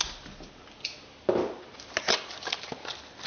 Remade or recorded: recorded